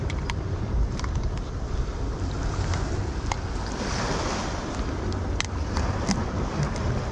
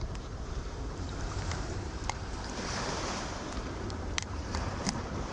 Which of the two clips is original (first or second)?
first